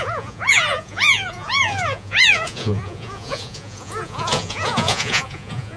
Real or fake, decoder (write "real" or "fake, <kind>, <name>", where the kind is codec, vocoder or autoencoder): fake, vocoder, Vocos